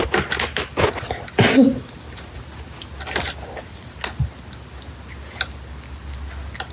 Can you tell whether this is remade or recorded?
recorded